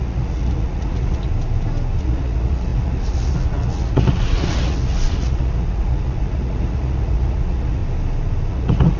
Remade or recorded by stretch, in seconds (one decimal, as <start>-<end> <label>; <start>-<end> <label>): 0.0-1.3 remade; 1.3-2.0 recorded; 2.0-7.8 remade; 7.8-8.5 recorded; 8.5-9.0 remade